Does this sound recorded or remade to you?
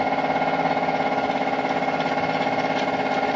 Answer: recorded